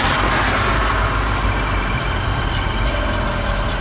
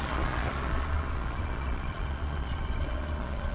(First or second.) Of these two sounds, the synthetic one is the second